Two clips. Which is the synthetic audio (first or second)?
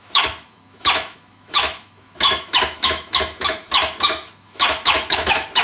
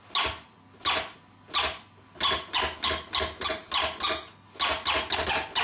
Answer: first